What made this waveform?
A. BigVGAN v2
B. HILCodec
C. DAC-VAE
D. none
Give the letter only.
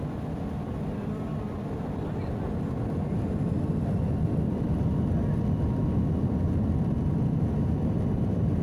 D